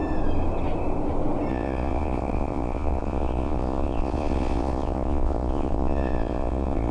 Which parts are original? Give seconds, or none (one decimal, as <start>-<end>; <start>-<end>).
0.0-1.5